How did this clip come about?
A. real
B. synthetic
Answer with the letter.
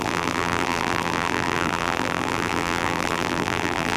B